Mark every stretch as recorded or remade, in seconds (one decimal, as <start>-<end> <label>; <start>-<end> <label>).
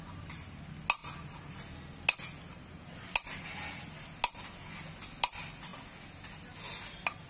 0.0-7.3 recorded